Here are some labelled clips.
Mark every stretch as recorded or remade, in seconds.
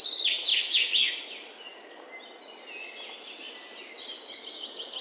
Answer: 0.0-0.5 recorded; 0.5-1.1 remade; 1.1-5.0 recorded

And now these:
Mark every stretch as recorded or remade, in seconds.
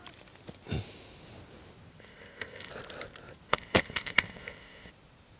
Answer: 0.0-2.0 recorded; 2.0-2.7 remade; 2.7-3.5 recorded; 3.5-4.9 remade; 4.9-5.4 recorded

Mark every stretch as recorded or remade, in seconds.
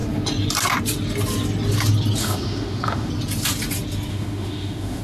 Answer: 0.0-2.2 recorded; 2.2-3.1 remade; 3.1-4.1 recorded; 4.1-5.0 remade